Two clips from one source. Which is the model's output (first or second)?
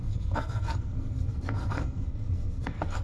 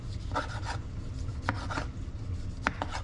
first